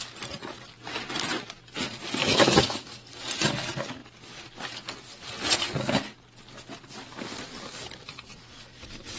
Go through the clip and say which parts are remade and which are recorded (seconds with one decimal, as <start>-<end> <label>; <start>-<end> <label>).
0.0-2.2 recorded; 2.2-2.9 remade; 2.9-9.2 recorded